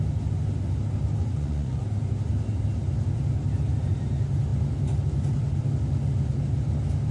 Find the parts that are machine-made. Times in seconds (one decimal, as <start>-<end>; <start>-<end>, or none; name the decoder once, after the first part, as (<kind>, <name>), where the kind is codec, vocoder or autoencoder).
1.2-1.8 (vocoder, Vocos)